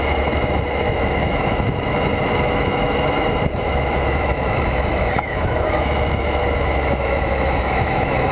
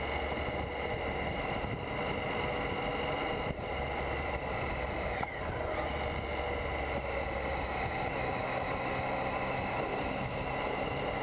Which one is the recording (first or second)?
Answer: second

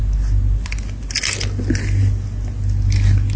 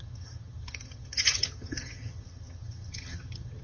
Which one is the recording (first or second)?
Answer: first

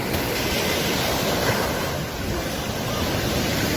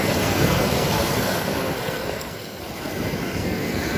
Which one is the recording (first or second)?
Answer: first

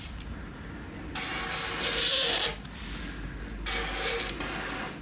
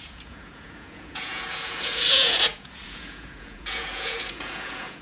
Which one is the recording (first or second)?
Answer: first